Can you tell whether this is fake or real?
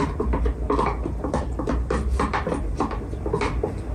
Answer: real